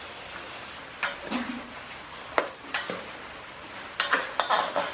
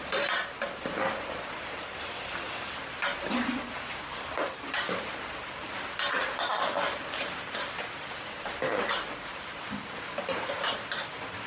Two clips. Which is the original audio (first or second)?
second